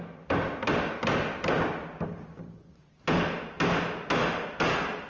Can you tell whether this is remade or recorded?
recorded